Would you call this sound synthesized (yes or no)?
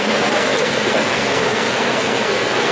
yes